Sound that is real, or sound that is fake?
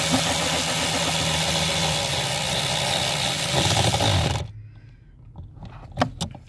real